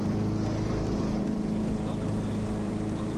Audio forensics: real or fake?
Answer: fake